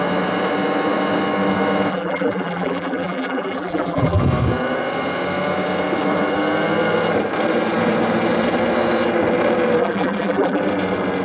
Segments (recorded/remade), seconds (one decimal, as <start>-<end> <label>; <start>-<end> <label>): 0.0-1.9 recorded; 1.9-4.2 remade; 4.2-9.8 recorded; 9.8-10.6 remade; 10.6-11.2 recorded